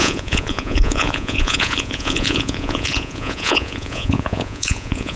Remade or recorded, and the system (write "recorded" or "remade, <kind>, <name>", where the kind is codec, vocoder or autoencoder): remade, vocoder, Vocos